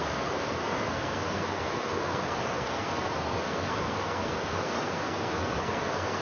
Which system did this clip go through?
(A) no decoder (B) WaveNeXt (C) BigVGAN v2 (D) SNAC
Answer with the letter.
D